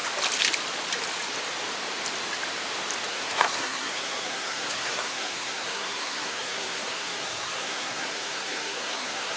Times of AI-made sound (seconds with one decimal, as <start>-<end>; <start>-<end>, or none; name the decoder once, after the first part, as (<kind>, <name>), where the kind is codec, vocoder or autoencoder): 3.1-9.4 (codec, SNAC)